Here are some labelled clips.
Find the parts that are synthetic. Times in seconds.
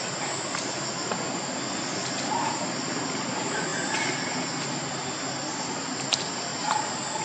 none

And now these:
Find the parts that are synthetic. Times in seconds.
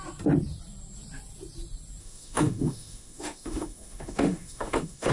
2.0-5.1 (autoencoder, DAC-VAE)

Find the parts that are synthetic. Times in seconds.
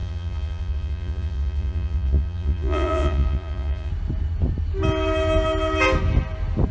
0.0-3.9 (vocoder, Vocos)